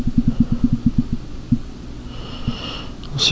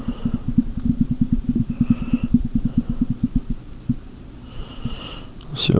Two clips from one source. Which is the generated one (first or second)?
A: second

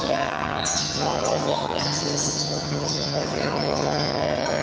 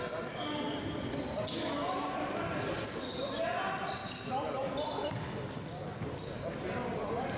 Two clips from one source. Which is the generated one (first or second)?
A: first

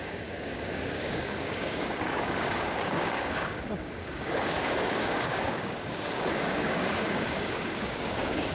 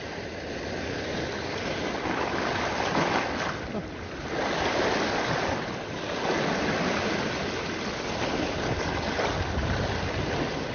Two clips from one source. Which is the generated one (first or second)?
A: first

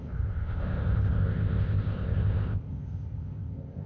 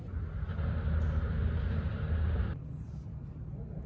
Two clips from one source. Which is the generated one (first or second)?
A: first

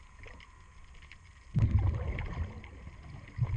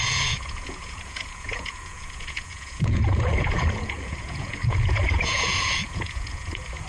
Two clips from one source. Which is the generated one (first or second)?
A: second